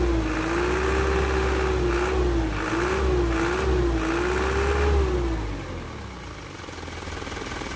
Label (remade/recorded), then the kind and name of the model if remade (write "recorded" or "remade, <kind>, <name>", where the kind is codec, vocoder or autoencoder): recorded